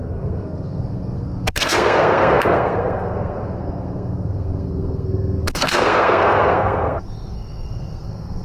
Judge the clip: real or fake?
fake